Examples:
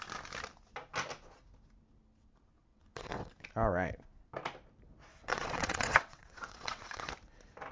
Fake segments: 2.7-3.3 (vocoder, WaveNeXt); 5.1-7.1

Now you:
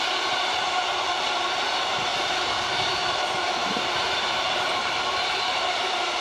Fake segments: 2.1-3.2 (vocoder, BigVGAN v2); 3.6-6.2

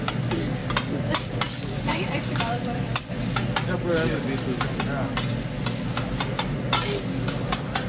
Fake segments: 0.6-3.1 (vocoder, BigVGAN v2)

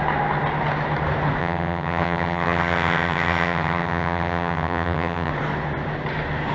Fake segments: 1.4-5.3 (vocoder, HiFi-GAN)

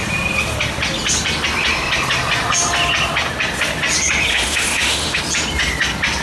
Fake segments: 4.3-5.2 (autoencoder, DAC-VAE)

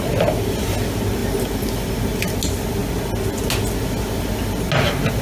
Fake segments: none

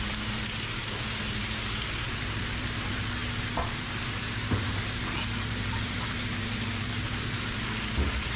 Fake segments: 0.0-8.4 (vocoder, BigVGAN v2)